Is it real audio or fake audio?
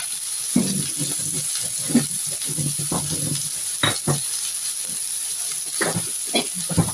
real